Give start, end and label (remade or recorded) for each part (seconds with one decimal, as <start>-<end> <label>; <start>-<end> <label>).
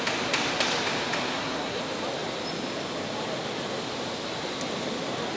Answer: 0.0-1.2 recorded; 1.2-1.8 remade; 1.8-5.4 recorded